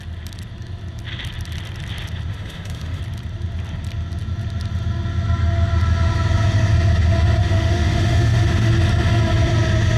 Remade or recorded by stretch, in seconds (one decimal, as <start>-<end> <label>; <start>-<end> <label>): 0.0-2.3 recorded; 2.3-3.0 remade; 3.0-7.4 recorded; 7.4-8.7 remade; 8.7-10.0 recorded